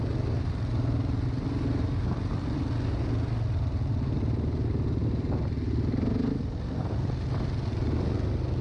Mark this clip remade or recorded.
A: recorded